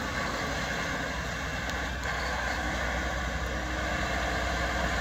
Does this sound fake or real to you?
real